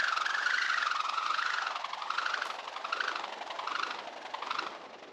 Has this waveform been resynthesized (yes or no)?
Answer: no